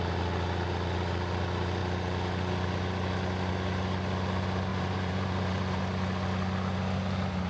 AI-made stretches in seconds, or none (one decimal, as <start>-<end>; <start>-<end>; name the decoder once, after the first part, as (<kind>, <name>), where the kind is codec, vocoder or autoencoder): 4.7-5.8 (vocoder, BigVGAN v2)